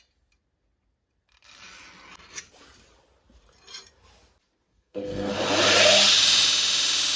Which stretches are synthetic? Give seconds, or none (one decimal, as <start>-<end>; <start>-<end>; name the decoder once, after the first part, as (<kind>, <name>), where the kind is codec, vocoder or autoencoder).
4.7-5.3 (codec, SNAC)